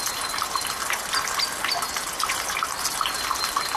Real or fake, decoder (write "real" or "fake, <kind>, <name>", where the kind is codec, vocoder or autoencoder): real